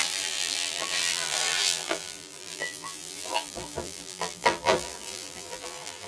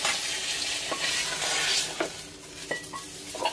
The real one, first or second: second